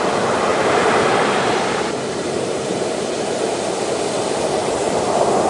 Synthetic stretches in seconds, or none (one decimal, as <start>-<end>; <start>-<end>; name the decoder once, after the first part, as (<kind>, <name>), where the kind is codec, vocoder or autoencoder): 0.5-3.0 (vocoder, BigVGAN v2); 4.6-5.5